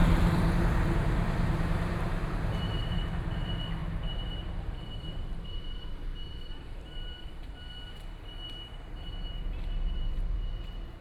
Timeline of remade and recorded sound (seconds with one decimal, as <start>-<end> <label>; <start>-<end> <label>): 0.0-3.2 remade; 3.2-3.8 recorded; 3.8-7.6 remade; 7.6-9.3 recorded; 9.3-10.5 remade; 10.5-11.0 recorded